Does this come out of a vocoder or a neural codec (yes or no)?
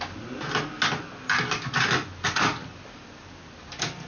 no